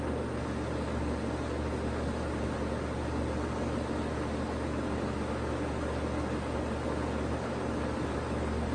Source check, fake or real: real